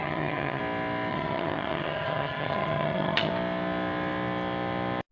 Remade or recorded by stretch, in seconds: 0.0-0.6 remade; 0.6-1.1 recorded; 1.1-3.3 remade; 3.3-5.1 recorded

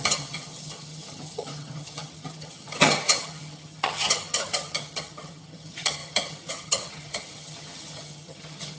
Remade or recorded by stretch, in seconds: 0.0-8.8 remade